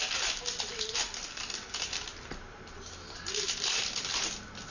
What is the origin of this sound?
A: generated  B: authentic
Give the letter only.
B